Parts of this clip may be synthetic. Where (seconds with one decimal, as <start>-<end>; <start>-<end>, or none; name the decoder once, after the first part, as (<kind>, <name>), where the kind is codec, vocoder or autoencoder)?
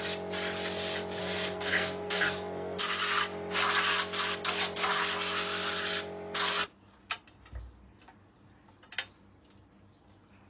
1.2-2.8 (codec, SNAC)